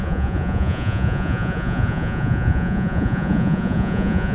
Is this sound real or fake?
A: fake